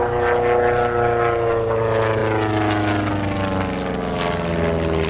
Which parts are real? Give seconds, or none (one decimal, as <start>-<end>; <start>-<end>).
0.0-5.1